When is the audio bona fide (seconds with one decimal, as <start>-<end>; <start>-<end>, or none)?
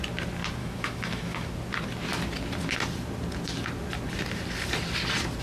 0.0-0.6; 1.5-5.4